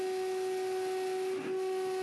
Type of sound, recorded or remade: recorded